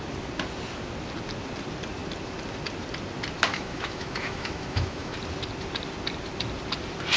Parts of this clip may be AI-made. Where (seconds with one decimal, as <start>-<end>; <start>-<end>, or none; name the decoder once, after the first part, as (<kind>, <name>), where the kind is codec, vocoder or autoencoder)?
3.5-5.2 (autoencoder, DAC-VAE)